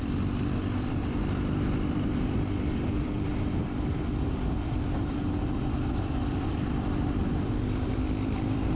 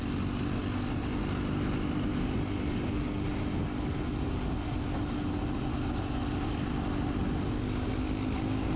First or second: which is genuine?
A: second